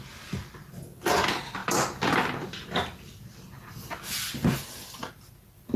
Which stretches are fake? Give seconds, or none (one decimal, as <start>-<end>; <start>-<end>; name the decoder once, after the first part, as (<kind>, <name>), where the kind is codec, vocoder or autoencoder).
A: none